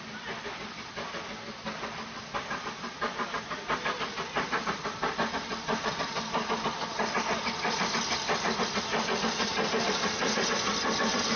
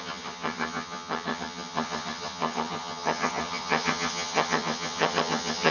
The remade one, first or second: second